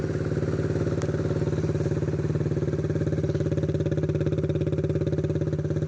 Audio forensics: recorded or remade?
recorded